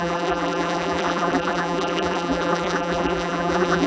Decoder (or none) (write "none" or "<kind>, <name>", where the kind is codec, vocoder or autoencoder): vocoder, BigVGAN v2